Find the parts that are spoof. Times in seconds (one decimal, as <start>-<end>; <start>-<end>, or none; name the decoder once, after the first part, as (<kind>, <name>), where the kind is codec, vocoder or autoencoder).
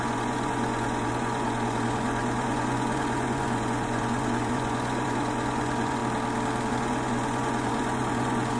0.0-6.0 (vocoder, Vocos); 6.7-8.6